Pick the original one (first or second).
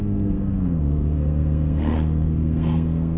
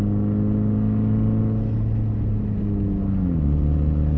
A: second